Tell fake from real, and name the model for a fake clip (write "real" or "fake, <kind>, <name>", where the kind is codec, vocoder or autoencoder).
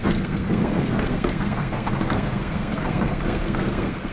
fake, codec, SNAC